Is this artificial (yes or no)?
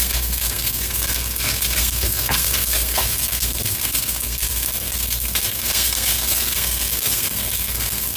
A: yes